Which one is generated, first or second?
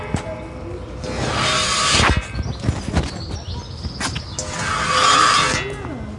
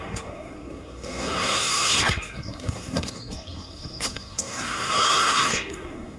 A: second